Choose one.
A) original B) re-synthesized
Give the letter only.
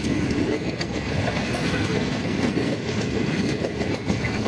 B